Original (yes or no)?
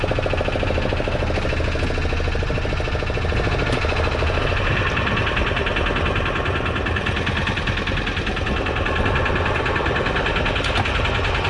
yes